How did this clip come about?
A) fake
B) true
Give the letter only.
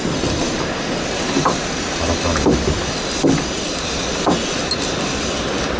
B